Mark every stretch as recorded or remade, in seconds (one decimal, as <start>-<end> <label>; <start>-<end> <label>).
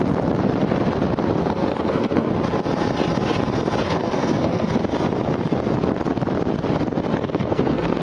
0.0-1.4 recorded; 1.4-2.3 remade; 2.3-3.8 recorded; 3.8-4.7 remade; 4.7-7.1 recorded; 7.1-8.0 remade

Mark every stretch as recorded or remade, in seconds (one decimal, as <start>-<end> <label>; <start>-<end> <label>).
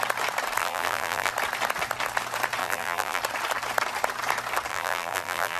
0.0-0.6 recorded; 0.6-1.3 remade; 1.3-2.6 recorded; 2.6-3.2 remade; 3.2-4.7 recorded; 4.7-5.6 remade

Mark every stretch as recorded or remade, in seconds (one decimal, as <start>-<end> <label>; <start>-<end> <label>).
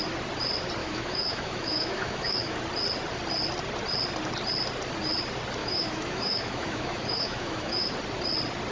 0.0-0.8 recorded; 0.8-2.6 remade; 2.6-5.6 recorded; 5.6-7.9 remade; 7.9-8.7 recorded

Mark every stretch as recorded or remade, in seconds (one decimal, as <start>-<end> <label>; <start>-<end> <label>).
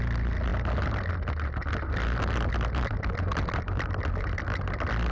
0.0-5.1 recorded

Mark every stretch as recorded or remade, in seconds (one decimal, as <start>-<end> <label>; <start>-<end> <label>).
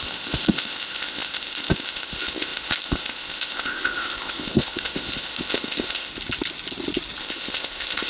0.0-6.1 remade; 6.1-7.2 recorded; 7.2-8.1 remade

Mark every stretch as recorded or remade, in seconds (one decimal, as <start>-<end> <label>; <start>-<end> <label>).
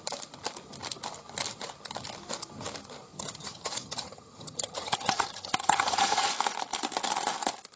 0.0-3.1 recorded; 3.1-6.3 remade; 6.3-7.8 recorded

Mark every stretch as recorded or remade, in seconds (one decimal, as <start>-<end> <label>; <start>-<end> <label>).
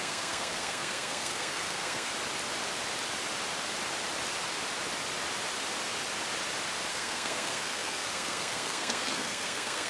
0.0-2.1 remade; 2.1-6.9 recorded; 6.9-9.9 remade